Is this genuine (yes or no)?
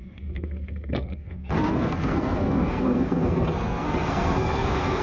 no